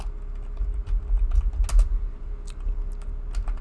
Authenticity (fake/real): real